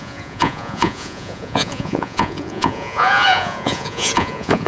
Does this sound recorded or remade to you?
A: remade